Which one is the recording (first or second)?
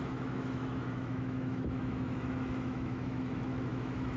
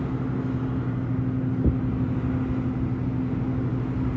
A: second